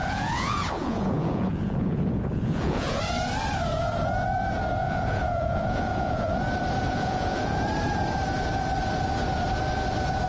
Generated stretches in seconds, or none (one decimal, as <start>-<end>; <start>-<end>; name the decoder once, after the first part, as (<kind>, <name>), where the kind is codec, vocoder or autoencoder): 0.0-3.0 (vocoder, Vocos); 4.8-6.3; 6.9-7.6